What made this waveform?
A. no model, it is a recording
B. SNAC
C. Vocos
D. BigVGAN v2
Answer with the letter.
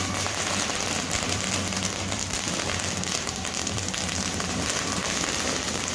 D